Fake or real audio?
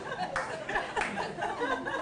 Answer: real